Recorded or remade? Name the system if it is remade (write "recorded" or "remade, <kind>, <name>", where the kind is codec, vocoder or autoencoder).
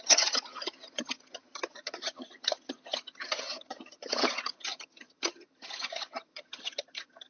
remade, vocoder, HiFi-GAN